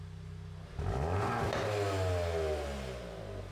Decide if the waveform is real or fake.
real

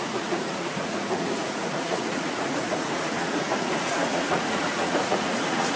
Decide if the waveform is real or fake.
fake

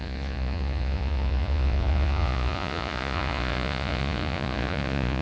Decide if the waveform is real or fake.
fake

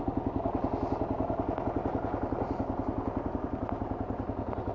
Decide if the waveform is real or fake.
real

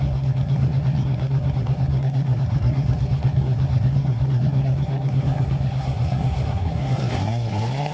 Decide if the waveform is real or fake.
fake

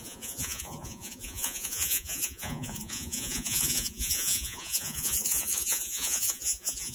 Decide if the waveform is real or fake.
fake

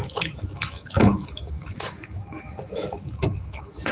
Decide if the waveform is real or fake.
fake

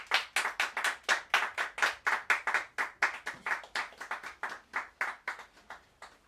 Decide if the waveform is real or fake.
real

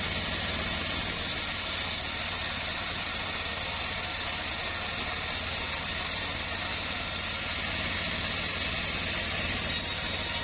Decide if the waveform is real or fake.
real